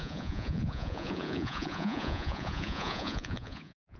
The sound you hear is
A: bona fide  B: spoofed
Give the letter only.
B